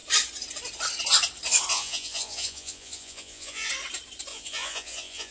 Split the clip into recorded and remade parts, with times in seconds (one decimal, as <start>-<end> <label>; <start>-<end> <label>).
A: 0.0-1.7 recorded; 1.7-3.7 remade; 3.7-4.3 recorded; 4.3-5.3 remade